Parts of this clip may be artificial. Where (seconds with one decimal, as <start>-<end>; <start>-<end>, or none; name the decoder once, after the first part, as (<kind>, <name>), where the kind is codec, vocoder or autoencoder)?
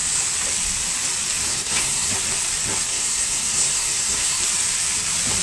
1.5-2.1 (codec, SNAC); 2.9-4.4